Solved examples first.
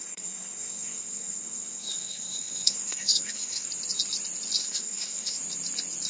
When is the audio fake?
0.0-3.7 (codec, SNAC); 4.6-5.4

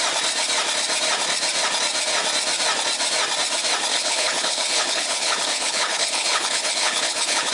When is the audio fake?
3.9-7.5 (codec, HILCodec)

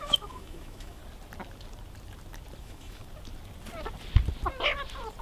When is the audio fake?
0.0-1.0 (autoencoder, DAC-VAE); 2.6-3.0

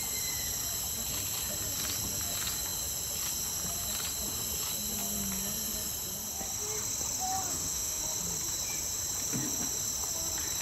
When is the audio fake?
7.5-8.0 (autoencoder, DAC-VAE)

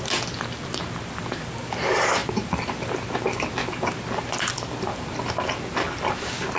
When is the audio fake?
none

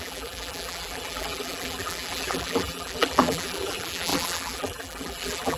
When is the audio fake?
0.0-5.6 (vocoder, BigVGAN v2)